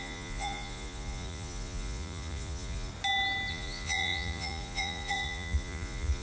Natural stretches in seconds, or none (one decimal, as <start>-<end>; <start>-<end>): 2.9-3.5